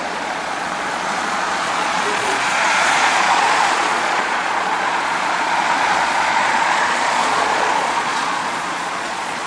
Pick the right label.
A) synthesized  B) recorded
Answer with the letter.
A